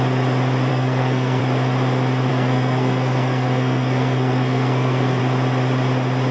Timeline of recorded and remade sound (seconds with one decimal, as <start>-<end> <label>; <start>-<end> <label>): 0.0-0.7 recorded; 0.7-1.4 remade; 1.4-2.3 recorded; 2.3-5.2 remade; 5.2-6.3 recorded